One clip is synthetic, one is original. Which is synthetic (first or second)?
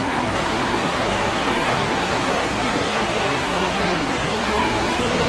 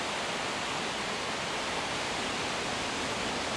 first